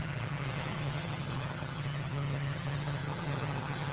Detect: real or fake fake